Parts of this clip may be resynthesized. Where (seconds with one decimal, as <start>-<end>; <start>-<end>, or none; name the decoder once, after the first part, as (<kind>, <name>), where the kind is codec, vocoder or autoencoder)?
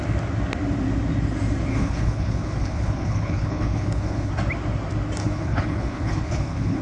1.7-4.3 (codec, HILCodec); 5.2-6.8